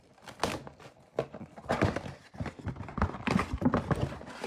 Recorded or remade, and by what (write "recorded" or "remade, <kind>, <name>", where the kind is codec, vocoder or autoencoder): recorded